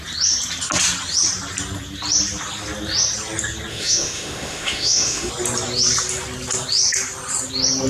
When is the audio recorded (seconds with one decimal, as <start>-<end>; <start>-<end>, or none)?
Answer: 0.0-3.7; 5.3-7.9